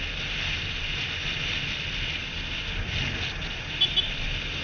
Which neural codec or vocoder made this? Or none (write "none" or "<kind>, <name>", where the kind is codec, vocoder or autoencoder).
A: none